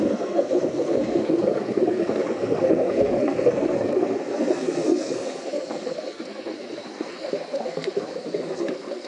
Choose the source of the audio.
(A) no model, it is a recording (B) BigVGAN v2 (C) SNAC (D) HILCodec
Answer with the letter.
C